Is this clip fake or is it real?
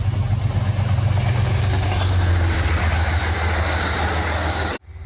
real